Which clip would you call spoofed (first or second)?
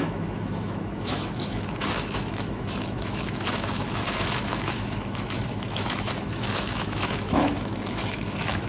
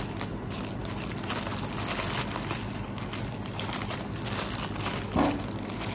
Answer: first